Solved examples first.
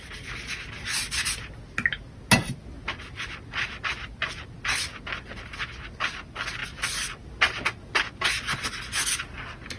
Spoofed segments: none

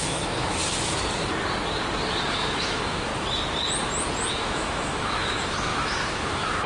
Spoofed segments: 0.0-0.6; 2.3-3.1; 4.3-6.7

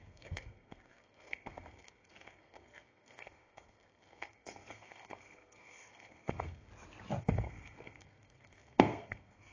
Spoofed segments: 0.0-6.7; 7.2-9.5

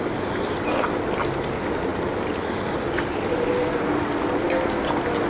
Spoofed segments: none